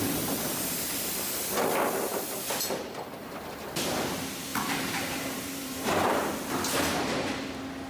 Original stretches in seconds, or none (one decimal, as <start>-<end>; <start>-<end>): 0.0-4.5; 6.3-7.9